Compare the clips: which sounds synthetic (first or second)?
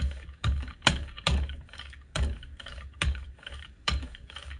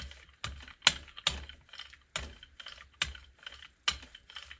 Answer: first